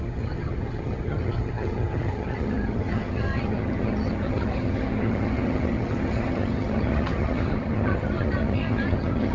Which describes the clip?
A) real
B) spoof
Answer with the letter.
B